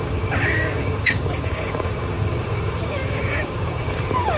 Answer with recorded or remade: remade